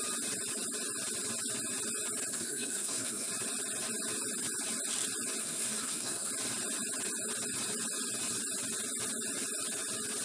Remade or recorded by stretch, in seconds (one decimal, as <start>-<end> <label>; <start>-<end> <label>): 0.0-2.3 recorded; 2.3-3.3 remade; 3.3-5.4 recorded; 5.4-6.3 remade; 6.3-10.2 recorded